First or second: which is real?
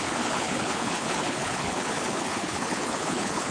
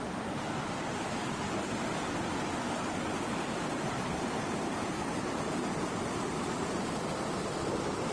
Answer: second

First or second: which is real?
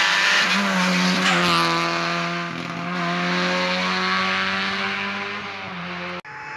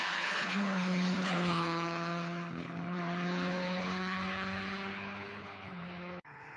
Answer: first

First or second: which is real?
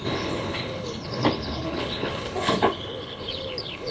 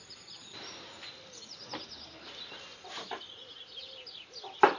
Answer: second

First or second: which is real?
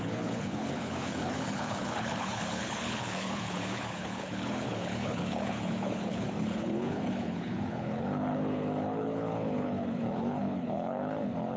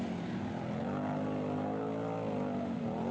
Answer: second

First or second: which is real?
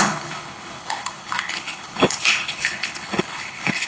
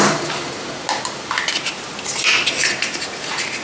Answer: second